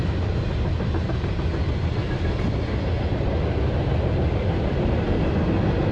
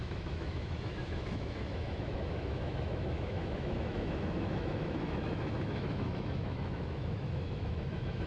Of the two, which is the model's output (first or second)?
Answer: second